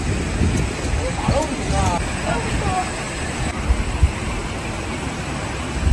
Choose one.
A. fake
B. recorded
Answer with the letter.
B